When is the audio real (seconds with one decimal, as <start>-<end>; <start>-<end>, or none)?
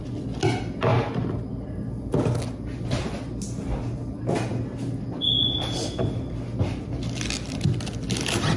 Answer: 0.0-8.6